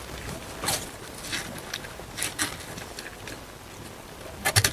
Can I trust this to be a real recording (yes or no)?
yes